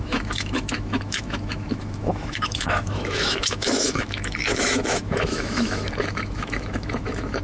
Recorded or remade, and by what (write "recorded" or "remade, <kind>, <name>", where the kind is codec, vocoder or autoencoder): remade, autoencoder, DAC-VAE